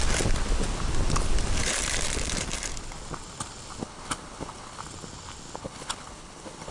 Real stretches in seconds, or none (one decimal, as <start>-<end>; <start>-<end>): 0.0-3.8; 4.8-5.6